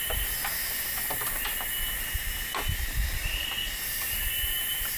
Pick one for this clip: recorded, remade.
recorded